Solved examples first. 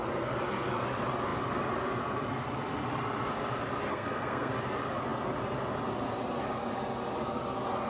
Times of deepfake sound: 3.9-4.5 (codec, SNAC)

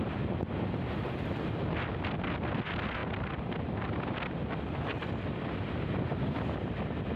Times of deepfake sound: none